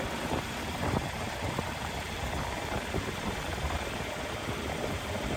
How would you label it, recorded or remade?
remade